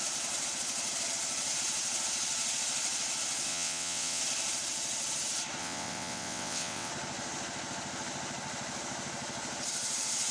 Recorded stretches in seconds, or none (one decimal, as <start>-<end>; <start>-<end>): 0.0-3.5; 4.2-5.6; 6.9-10.3